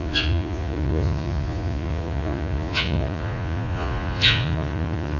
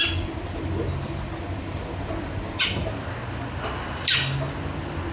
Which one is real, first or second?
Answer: second